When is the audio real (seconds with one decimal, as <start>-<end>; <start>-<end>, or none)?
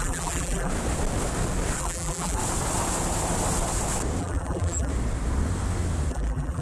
0.7-1.8; 2.4-4.2; 4.9-6.1